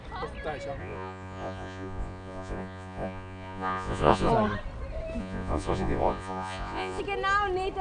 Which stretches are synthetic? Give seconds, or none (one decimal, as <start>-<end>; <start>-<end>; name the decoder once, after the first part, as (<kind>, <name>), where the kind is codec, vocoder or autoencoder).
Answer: 0.8-4.3 (vocoder, Vocos); 5.2-7.0